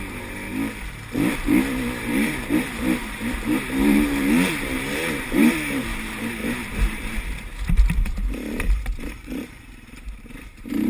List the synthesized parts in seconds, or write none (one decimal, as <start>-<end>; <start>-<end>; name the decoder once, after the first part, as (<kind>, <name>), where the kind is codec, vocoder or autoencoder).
0.0-0.5 (vocoder, BigVGAN v2); 2.0-10.9